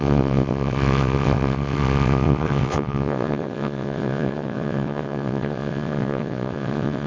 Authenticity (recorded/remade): remade